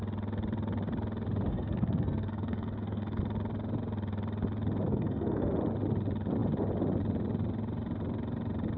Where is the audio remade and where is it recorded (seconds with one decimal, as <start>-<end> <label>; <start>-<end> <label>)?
0.0-1.5 recorded; 1.5-3.2 remade; 3.2-4.9 recorded; 4.9-5.5 remade; 5.5-8.8 recorded